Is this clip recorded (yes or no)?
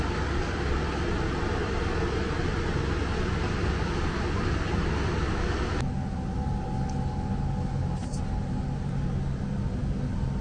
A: yes